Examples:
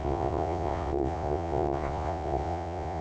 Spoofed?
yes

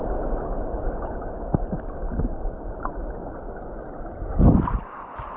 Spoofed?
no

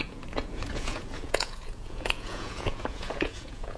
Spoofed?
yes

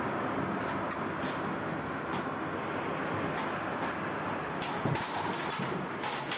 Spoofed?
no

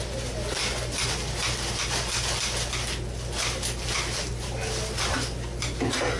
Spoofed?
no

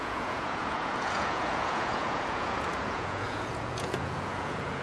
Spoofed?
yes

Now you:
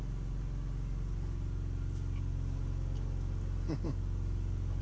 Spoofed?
no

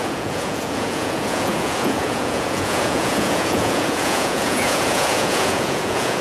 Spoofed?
yes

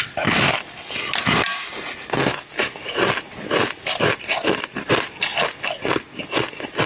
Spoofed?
no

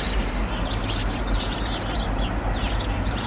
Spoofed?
no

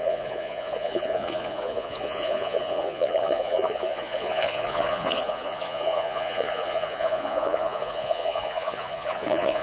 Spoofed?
yes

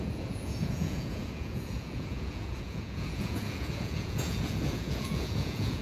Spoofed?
yes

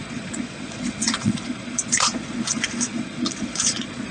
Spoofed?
yes